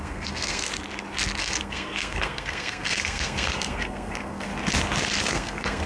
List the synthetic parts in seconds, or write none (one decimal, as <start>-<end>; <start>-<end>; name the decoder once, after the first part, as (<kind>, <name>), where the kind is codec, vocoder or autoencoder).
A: 0.0-0.7 (codec, SNAC); 1.4-4.5; 5.2-5.9

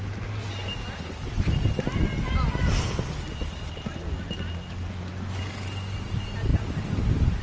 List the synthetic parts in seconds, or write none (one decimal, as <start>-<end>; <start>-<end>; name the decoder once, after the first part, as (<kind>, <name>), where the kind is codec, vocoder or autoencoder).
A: none

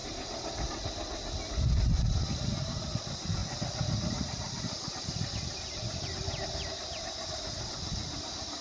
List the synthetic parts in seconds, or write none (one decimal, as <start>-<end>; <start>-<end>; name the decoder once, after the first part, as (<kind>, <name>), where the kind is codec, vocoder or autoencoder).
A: 0.0-8.6 (vocoder, BigVGAN v2)

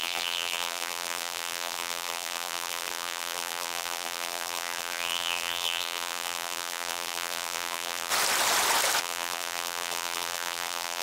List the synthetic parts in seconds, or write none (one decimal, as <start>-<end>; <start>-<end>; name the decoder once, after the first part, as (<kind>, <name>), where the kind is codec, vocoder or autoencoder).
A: 0.0-8.1 (vocoder, BigVGAN v2); 9.0-11.0

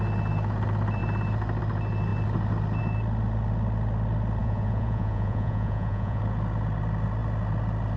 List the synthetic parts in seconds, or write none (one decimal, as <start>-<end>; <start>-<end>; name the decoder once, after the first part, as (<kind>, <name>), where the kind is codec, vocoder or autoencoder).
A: 4.4-6.2 (vocoder, Vocos)

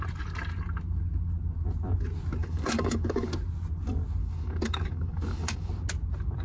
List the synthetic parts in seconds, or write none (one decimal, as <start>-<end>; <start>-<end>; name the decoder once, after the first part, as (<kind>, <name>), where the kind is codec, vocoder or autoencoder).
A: 2.4-3.3 (codec, DAC); 4.2-5.7